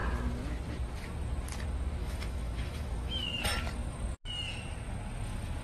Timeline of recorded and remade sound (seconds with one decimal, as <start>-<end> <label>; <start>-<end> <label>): 0.0-2.0 recorded; 2.0-3.2 remade; 3.2-5.6 recorded